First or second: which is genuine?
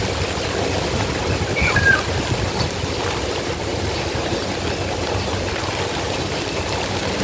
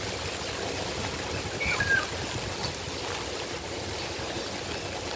second